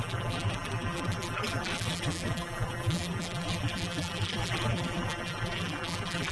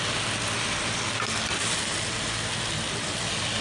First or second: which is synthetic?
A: first